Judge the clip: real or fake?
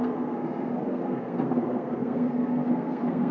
fake